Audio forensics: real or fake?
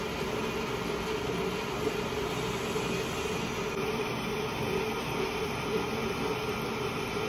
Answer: real